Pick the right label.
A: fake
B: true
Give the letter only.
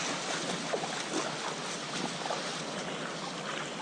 B